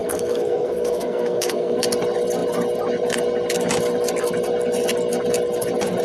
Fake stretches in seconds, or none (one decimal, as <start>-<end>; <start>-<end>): 0.0-1.8